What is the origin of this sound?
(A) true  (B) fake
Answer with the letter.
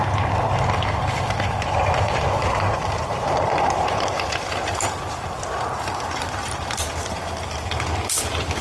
A